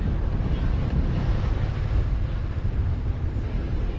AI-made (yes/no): no